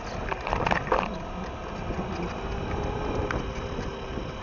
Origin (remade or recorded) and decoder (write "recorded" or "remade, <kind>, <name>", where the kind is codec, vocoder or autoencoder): recorded